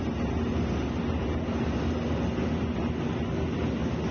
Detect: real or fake real